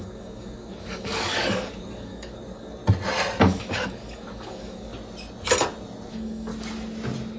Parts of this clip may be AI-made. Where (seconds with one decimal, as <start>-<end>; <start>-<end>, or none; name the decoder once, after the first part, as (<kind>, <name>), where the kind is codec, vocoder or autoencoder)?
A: 0.0-2.8 (codec, DAC); 3.4-4.9; 6.1-6.5